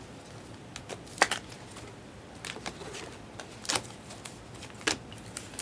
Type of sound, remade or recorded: recorded